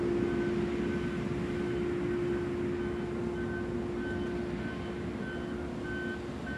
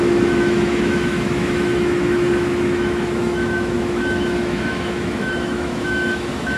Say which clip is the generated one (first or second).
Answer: second